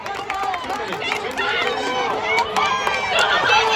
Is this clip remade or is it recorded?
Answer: recorded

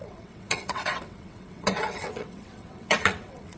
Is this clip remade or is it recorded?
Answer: remade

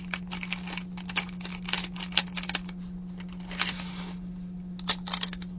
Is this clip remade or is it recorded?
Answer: recorded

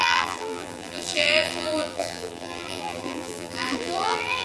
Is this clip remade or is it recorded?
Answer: remade